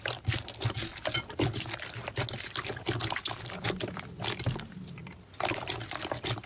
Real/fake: real